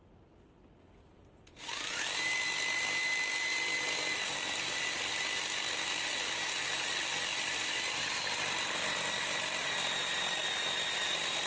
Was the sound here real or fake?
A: real